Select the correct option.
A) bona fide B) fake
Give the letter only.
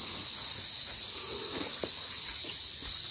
B